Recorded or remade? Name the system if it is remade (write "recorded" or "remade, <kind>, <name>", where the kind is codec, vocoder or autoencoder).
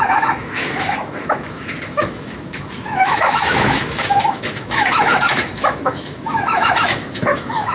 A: remade, autoencoder, DAC-VAE